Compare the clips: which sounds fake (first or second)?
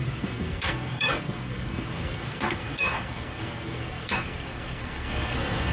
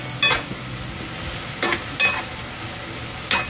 first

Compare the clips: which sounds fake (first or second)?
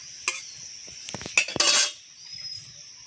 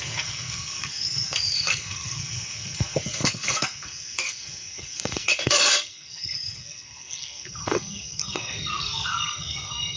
second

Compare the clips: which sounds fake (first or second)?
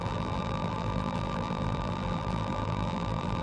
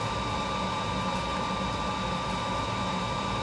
first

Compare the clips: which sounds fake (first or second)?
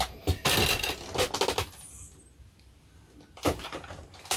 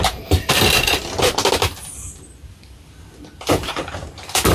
second